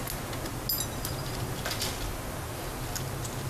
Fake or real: real